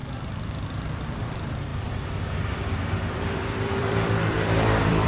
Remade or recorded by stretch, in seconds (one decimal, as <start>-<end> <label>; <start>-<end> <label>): 0.0-5.1 remade